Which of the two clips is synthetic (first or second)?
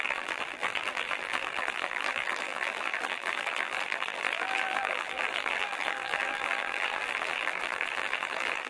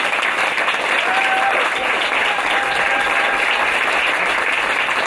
first